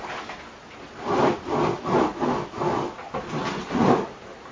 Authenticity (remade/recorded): recorded